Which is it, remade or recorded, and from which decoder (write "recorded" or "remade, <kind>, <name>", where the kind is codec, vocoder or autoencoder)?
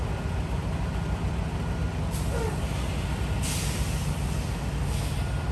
recorded